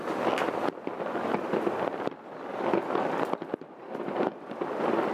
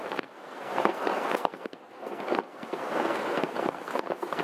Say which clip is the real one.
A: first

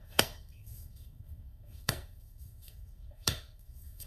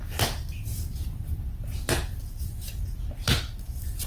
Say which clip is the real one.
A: second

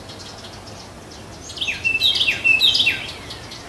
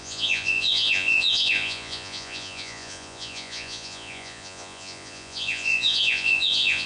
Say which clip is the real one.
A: first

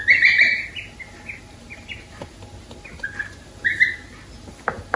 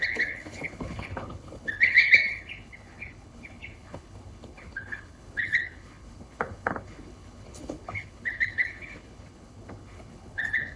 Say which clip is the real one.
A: first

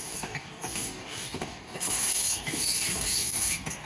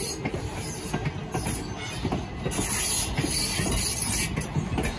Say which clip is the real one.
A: second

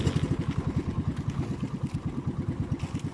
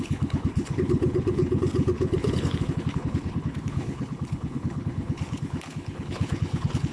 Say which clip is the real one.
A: first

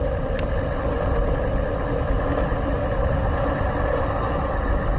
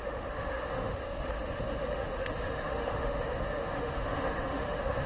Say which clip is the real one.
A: first